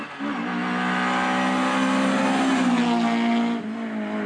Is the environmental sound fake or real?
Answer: real